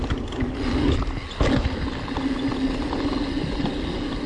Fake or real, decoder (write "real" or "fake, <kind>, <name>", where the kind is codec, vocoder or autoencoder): real